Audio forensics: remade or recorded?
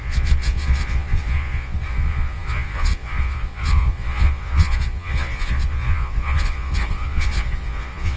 remade